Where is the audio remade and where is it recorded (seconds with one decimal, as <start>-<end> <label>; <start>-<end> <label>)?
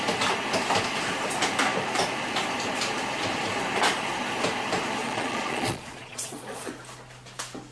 0.0-5.0 recorded; 5.0-6.7 remade; 6.7-7.7 recorded